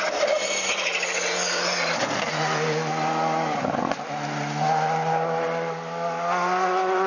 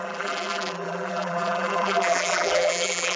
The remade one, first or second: second